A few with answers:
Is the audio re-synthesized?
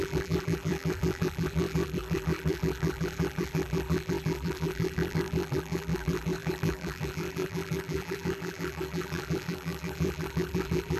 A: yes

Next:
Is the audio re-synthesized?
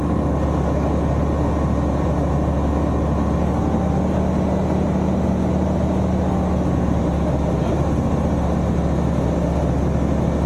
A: no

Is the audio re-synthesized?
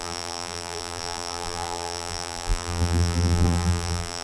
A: yes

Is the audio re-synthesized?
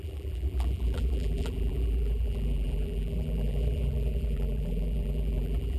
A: yes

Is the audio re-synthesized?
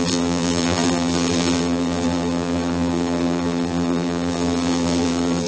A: yes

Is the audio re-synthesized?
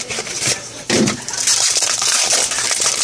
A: yes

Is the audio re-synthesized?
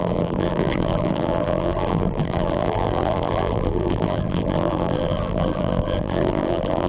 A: yes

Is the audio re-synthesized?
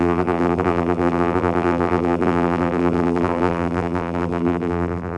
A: yes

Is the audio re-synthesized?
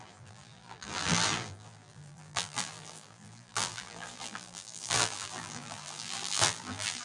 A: yes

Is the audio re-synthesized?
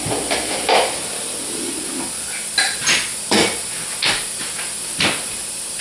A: no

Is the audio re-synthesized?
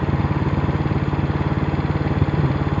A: no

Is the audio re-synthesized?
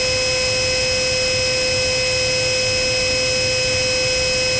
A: no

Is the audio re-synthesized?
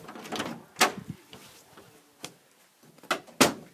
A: no